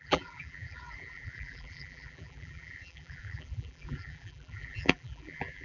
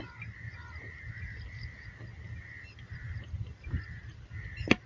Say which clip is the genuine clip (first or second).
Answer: second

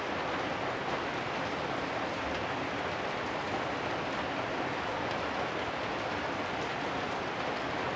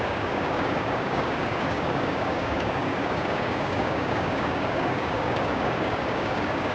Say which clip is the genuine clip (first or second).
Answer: first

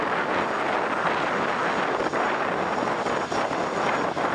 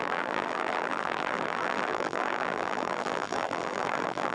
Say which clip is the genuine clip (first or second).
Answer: first